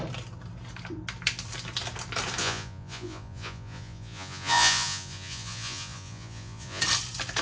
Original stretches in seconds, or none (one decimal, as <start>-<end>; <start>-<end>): 0.0-2.4; 6.8-7.4